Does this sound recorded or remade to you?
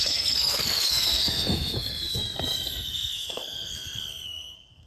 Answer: remade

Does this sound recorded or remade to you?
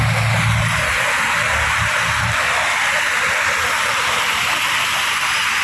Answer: recorded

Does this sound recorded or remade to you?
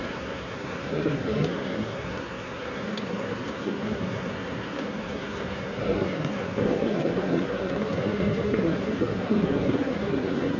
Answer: remade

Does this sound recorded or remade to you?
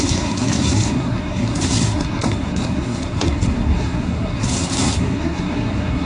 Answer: remade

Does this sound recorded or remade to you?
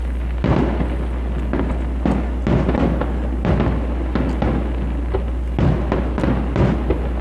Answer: recorded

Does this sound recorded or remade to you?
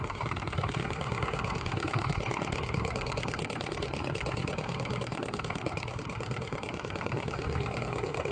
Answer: remade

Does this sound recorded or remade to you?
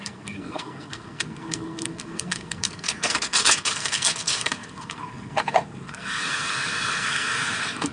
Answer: remade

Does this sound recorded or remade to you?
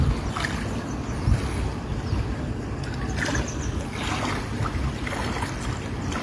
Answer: recorded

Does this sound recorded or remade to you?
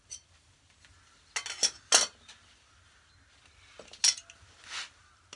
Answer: recorded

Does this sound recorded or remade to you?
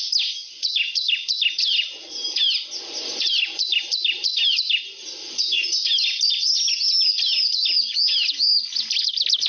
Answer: recorded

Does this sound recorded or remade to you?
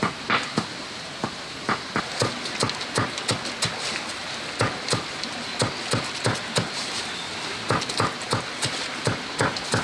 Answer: recorded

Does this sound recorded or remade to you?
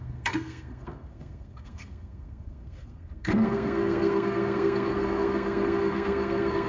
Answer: remade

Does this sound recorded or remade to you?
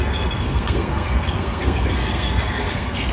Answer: remade